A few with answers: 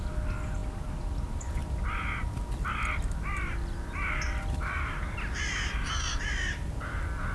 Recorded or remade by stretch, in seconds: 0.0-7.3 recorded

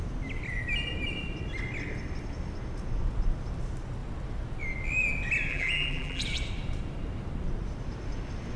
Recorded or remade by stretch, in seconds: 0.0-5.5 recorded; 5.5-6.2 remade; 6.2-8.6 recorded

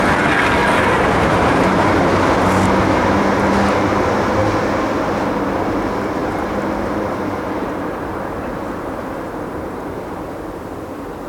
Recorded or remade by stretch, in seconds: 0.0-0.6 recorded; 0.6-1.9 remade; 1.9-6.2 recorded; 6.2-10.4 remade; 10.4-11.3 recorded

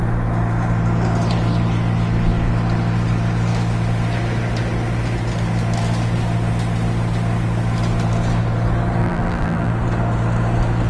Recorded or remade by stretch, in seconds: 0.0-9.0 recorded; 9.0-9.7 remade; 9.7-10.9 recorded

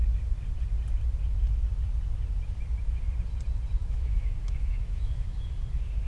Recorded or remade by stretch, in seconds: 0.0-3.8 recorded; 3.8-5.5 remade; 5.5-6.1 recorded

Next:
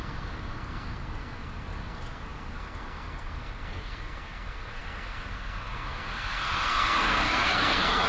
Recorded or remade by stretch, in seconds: 0.0-8.1 remade